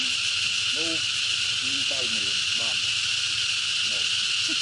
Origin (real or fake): real